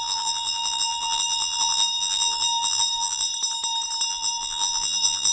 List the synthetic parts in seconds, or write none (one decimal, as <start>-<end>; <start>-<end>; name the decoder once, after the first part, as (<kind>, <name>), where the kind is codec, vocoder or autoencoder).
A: 0.0-3.3 (vocoder, BigVGAN v2); 4.1-5.3